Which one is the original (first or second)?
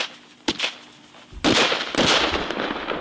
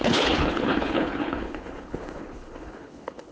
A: first